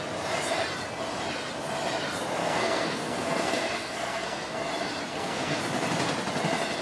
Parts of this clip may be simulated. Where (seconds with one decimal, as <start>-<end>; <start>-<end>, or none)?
2.4-4.6; 5.1-5.6